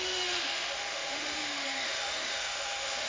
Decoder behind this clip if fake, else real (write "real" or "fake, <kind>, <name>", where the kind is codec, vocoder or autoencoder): fake, autoencoder, DAC-VAE